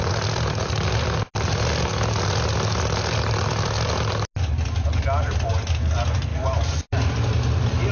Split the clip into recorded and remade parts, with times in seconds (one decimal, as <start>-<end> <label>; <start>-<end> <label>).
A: 0.0-7.9 recorded